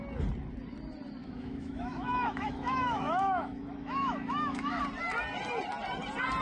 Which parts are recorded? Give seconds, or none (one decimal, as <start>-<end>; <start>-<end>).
0.0-1.2; 4.8-6.4